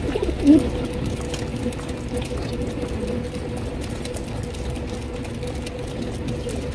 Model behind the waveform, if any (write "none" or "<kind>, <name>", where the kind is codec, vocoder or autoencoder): none